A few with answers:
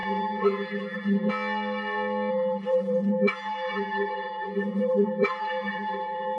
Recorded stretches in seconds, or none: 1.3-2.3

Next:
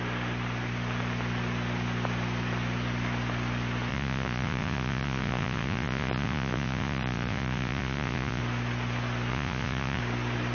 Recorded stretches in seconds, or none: 0.0-3.9; 8.4-9.3; 10.0-10.5

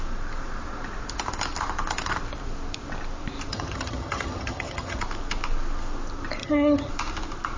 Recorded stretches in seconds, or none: 0.0-3.5; 5.0-6.4; 6.9-7.6

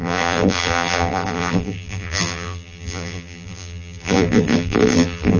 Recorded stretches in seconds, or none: none

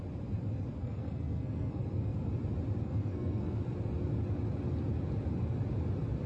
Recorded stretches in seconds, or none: 0.0-0.8; 2.3-2.8; 3.6-6.3

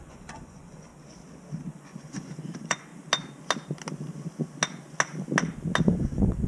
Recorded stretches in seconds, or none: 0.9-1.7; 2.9-5.8

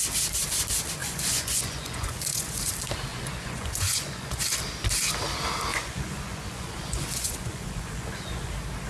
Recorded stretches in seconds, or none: 0.0-1.0; 2.7-3.1; 4.4-5.7; 8.5-8.9

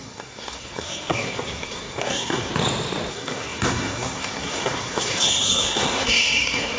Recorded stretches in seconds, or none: 2.5-3.1